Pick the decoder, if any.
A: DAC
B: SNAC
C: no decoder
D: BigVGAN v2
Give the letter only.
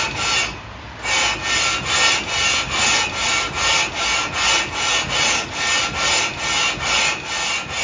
C